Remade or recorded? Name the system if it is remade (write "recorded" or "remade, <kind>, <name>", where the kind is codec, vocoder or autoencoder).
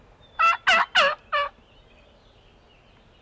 recorded